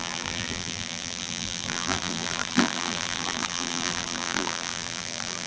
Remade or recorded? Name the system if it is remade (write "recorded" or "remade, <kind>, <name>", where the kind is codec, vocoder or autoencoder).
remade, vocoder, BigVGAN v2